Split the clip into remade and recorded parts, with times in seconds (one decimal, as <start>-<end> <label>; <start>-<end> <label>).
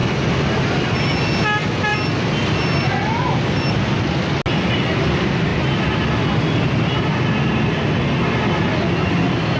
0.0-9.6 recorded